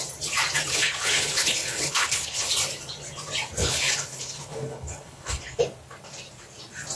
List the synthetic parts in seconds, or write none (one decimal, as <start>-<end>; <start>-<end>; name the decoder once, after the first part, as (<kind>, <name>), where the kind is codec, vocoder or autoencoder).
0.7-2.5 (codec, HILCodec); 3.6-5.6